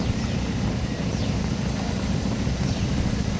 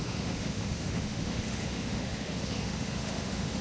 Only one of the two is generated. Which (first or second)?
second